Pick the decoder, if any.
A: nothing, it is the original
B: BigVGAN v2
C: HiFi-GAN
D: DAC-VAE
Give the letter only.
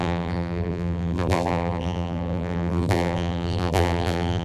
B